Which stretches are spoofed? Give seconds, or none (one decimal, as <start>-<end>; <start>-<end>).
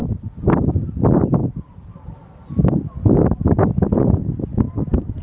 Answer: none